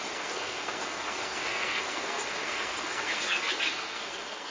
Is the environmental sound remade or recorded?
remade